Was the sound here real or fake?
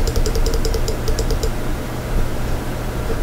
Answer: fake